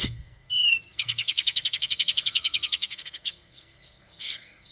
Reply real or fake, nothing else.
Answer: fake